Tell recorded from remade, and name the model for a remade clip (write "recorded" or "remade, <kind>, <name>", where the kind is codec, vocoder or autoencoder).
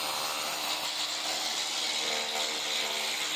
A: recorded